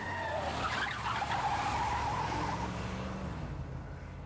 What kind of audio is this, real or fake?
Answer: real